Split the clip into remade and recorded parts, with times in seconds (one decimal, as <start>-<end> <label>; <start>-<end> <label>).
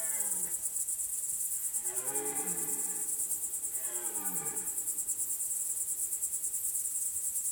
0.0-1.1 recorded; 1.1-2.1 remade; 2.1-3.0 recorded; 3.0-5.6 remade; 5.6-6.0 recorded; 6.0-7.5 remade